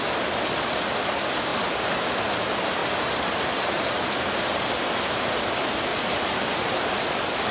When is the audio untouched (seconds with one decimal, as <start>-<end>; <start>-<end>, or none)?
0.0-2.8; 4.6-5.9; 7.1-7.5